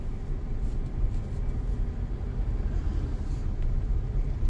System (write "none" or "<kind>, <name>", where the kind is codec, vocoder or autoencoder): none